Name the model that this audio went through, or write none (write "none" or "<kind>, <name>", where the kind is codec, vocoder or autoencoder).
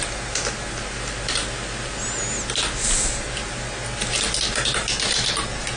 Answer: none